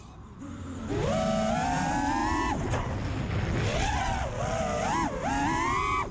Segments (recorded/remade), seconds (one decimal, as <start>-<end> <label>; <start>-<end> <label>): 0.0-3.7 recorded; 3.7-4.6 remade; 4.6-6.1 recorded